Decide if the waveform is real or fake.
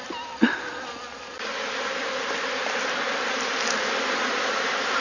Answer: real